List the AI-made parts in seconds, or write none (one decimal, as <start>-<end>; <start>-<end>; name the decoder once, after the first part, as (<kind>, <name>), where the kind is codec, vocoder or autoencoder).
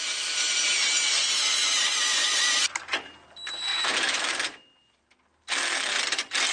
none